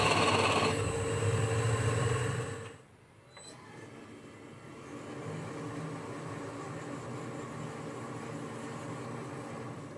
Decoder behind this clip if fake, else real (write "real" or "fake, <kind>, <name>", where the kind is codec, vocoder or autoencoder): real